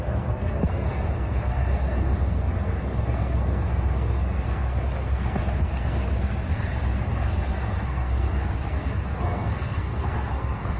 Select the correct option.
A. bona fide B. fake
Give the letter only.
B